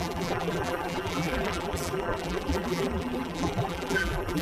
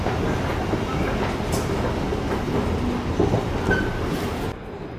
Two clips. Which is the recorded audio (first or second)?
second